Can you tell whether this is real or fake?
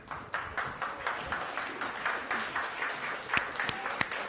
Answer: real